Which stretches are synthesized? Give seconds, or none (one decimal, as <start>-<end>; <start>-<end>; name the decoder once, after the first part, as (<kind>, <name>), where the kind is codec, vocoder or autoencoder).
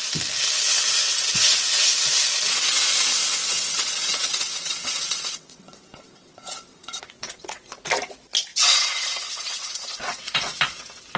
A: 3.4-7.8 (vocoder, WaveNeXt); 8.5-10.6